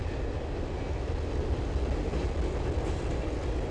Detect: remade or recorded recorded